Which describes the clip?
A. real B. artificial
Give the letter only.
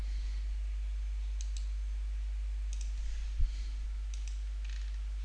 A